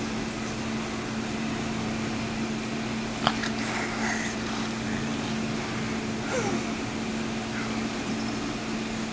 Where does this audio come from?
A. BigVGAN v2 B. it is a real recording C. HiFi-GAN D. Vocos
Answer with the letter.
A